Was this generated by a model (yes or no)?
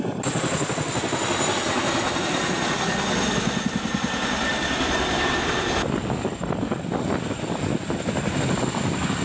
no